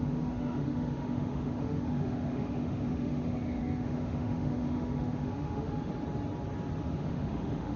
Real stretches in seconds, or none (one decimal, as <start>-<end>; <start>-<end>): 5.9-7.0